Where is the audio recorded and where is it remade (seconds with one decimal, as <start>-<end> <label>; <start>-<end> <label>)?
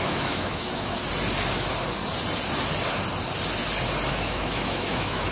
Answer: 0.0-1.0 remade; 1.0-4.1 recorded; 4.1-5.3 remade